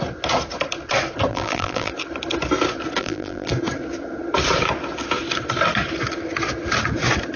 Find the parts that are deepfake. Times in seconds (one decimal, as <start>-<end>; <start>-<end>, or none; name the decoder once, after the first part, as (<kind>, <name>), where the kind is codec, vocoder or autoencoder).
1.3-1.9 (vocoder, BigVGAN v2); 3.0-3.5